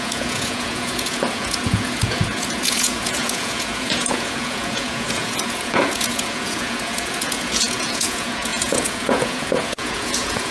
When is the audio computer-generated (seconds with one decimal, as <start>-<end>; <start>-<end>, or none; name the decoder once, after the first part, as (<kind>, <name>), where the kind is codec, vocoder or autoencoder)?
0.0-10.5 (vocoder, Vocos)